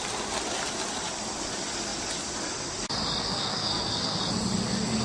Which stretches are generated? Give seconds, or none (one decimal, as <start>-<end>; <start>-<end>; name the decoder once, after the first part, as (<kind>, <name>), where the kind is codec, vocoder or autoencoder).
3.2-4.2 (codec, SNAC)